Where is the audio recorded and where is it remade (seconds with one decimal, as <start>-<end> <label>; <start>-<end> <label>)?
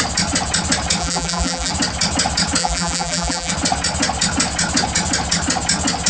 0.0-1.0 recorded; 1.0-1.7 remade; 1.7-2.6 recorded; 2.6-3.5 remade; 3.5-6.1 recorded